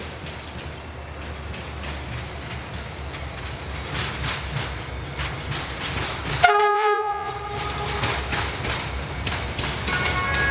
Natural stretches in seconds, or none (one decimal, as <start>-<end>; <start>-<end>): 0.0-6.7; 7.3-10.5